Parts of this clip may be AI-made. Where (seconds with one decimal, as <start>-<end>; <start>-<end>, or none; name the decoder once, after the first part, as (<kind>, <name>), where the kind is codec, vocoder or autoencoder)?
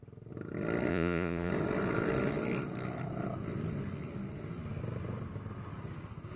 0.9-1.5 (vocoder, Vocos)